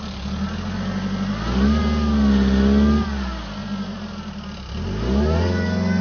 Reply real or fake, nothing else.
real